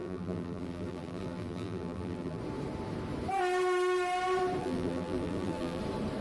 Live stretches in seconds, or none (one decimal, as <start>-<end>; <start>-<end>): 2.4-4.6; 5.8-6.2